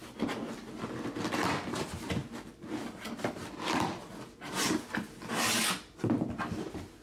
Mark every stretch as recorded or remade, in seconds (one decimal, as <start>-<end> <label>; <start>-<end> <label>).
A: 0.0-7.0 recorded